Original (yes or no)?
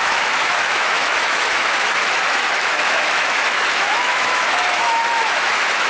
no